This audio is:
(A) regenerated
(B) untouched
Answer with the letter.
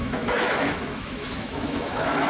A